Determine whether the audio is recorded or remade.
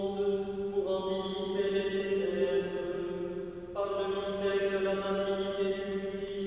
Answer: recorded